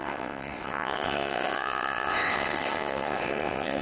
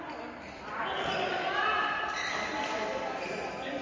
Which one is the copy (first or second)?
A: first